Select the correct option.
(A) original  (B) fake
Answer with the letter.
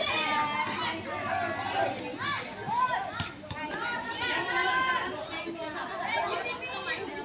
A